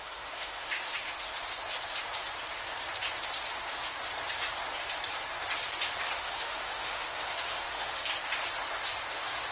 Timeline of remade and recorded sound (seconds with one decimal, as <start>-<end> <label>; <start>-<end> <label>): 0.0-1.3 remade; 1.3-6.2 recorded; 6.2-8.0 remade; 8.0-9.1 recorded; 9.1-9.5 remade